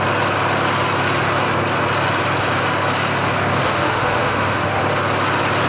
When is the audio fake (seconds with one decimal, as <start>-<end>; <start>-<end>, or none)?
3.6-4.8